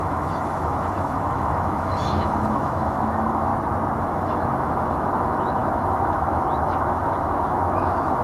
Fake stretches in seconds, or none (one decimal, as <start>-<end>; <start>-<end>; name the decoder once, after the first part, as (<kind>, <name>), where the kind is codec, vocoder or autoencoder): 0.0-3.5 (autoencoder, DAC-VAE); 4.0-8.2

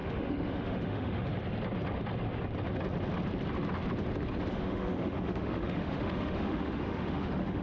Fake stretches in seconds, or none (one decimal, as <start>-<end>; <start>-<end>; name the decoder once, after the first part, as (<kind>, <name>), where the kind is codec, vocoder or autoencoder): 0.0-1.3 (autoencoder, DAC-VAE); 4.5-7.6

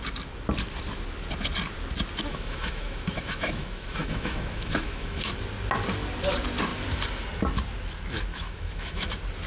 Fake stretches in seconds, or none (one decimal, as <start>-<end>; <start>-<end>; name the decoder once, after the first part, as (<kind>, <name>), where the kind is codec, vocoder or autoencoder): 2.3-5.3 (autoencoder, DAC-VAE); 8.3-9.1

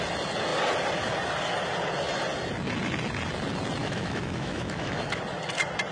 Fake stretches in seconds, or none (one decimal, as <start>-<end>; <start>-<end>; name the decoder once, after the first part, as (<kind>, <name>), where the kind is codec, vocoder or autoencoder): 3.8-5.2 (autoencoder, DAC-VAE)

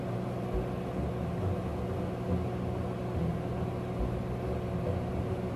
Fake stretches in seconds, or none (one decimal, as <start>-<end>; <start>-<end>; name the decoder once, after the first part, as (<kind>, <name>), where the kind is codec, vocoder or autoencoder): none

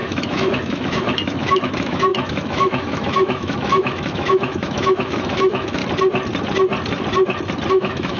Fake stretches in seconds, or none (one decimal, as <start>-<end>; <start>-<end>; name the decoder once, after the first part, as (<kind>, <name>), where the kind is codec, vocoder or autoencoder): 0.0-5.8 (autoencoder, DAC-VAE); 7.7-8.2

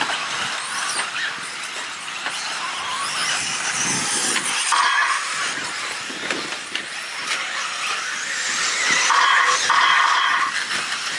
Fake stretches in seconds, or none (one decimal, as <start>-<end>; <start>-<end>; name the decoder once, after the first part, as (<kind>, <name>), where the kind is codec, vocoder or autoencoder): none